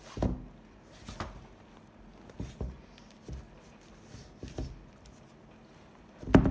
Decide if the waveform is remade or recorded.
recorded